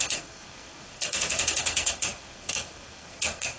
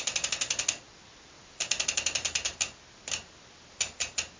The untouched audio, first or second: second